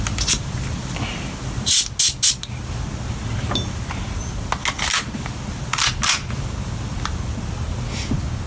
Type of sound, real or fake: real